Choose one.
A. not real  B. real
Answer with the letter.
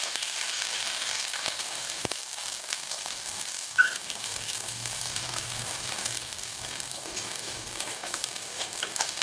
A